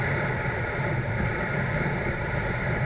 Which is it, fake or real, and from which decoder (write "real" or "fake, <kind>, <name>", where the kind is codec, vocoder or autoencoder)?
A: real